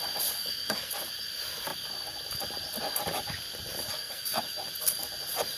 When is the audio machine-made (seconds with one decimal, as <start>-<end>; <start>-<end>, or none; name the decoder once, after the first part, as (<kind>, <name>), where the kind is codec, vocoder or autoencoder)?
0.4-0.9 (codec, SNAC); 3.9-4.4